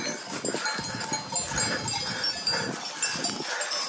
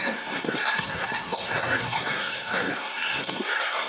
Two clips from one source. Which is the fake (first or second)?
second